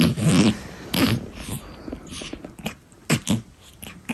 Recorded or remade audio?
recorded